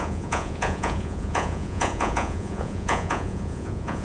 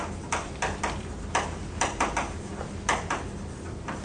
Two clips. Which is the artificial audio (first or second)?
first